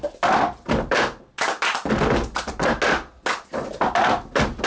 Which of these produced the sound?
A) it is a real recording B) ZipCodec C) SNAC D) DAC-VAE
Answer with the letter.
A